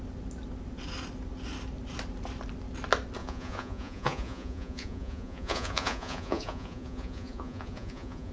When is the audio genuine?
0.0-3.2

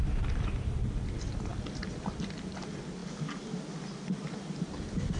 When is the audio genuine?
0.0-5.2

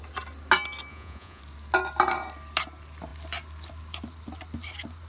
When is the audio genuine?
0.0-0.9; 1.4-5.1

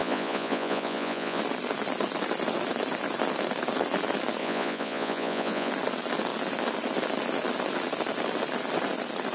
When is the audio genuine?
1.4-4.4; 5.7-9.3

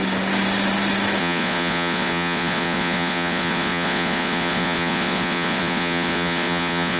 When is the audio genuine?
0.0-1.2

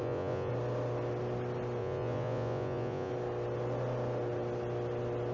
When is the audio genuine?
0.5-1.8; 3.1-5.3

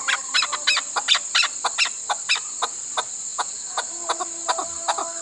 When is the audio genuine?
0.0-3.3; 3.9-5.2